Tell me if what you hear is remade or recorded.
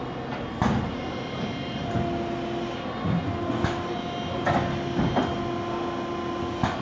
recorded